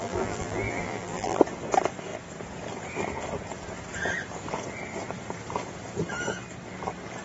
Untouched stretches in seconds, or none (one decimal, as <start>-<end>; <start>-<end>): 1.4-7.2